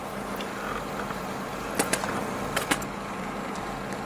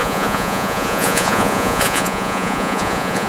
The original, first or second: first